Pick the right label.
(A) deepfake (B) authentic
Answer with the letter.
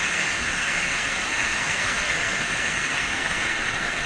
A